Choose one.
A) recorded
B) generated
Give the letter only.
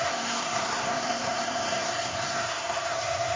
B